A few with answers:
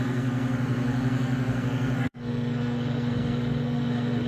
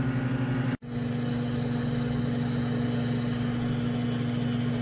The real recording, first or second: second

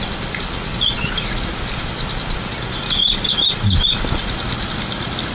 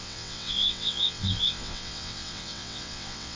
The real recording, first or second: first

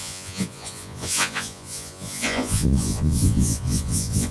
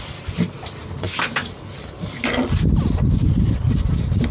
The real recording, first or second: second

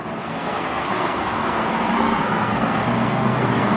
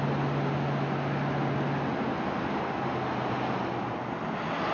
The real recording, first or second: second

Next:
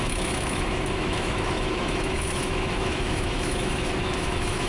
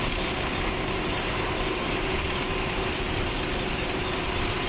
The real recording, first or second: second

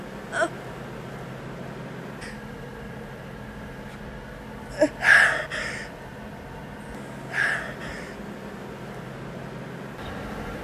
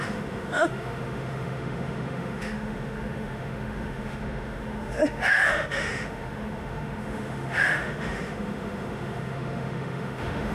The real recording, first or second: first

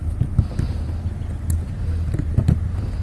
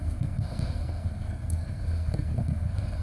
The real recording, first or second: first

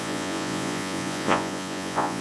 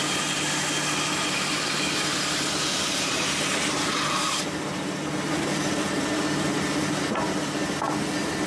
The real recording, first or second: second